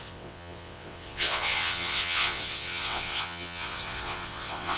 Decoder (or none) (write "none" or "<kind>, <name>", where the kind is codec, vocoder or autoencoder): vocoder, WaveNeXt